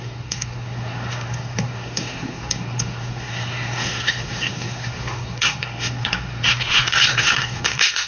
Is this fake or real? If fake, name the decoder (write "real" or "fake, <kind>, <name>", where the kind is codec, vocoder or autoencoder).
fake, codec, SNAC